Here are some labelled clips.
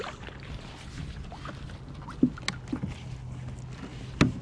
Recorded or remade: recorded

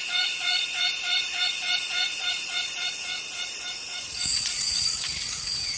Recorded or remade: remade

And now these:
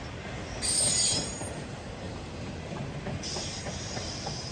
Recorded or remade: recorded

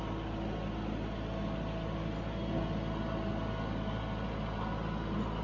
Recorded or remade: recorded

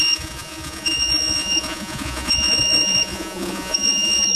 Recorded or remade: remade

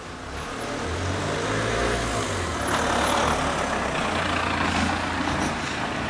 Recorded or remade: recorded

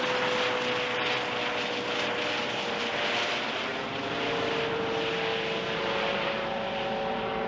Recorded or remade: recorded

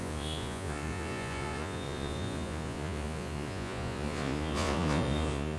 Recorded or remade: remade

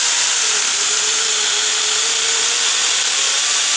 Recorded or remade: recorded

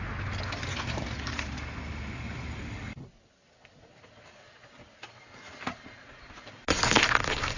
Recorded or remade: recorded